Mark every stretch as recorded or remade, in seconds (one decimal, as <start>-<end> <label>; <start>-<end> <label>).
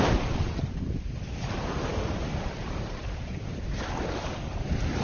0.0-5.0 recorded